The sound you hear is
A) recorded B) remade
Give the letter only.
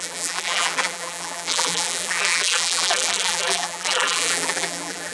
B